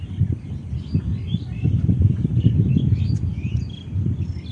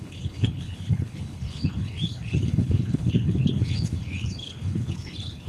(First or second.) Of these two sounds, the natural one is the first